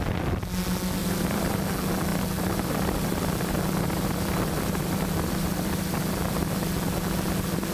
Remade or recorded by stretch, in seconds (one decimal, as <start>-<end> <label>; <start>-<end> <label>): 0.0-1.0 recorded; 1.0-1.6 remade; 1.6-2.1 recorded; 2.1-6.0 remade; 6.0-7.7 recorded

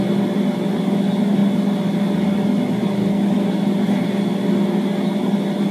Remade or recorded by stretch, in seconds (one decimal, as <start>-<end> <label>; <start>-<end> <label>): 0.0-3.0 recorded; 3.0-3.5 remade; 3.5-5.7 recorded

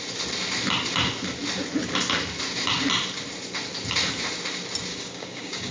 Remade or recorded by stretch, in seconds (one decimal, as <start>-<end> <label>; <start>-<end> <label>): 0.0-4.9 recorded; 4.9-5.7 remade

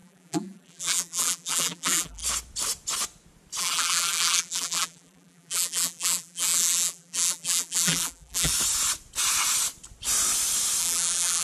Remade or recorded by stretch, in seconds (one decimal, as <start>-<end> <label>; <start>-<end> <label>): 0.0-2.2 remade; 2.2-3.6 recorded; 3.6-8.5 remade; 8.5-10.8 recorded; 10.8-11.4 remade

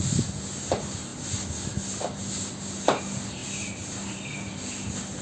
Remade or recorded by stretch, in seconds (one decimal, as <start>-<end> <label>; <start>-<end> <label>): 0.0-5.2 recorded

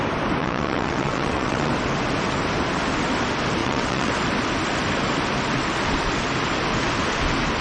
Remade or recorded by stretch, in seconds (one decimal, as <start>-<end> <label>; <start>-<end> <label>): 0.0-0.4 recorded; 0.4-1.7 remade; 1.7-3.6 recorded; 3.6-4.1 remade; 4.1-7.6 recorded

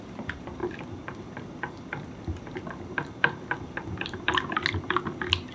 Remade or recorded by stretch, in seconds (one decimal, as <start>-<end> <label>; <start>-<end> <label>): 0.0-5.5 recorded